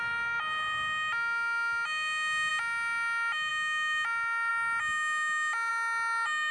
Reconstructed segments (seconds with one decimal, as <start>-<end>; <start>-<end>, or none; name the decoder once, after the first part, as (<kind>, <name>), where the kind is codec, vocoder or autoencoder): none